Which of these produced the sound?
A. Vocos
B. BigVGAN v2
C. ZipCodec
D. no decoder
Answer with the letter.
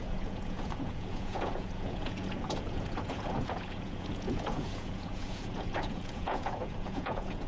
A